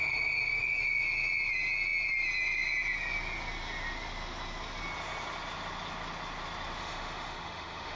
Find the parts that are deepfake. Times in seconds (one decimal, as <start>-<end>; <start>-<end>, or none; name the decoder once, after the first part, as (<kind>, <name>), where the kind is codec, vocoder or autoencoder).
6.8-8.0 (autoencoder, DAC-VAE)